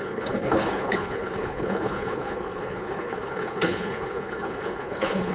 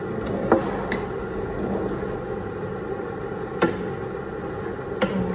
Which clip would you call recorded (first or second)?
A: second